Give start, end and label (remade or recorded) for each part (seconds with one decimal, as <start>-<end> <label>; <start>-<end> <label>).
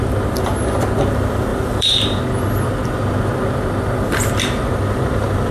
0.0-1.5 recorded; 1.5-2.2 remade; 2.2-5.5 recorded